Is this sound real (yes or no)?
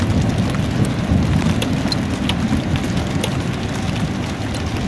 yes